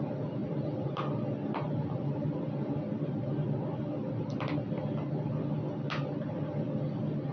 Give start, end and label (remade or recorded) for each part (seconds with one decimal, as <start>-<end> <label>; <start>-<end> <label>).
0.0-7.3 recorded